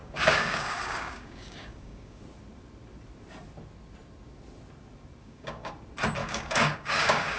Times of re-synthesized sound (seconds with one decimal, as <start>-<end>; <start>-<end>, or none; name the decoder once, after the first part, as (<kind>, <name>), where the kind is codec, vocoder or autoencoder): 0.0-2.2 (codec, DAC); 5.2-5.7; 6.2-7.4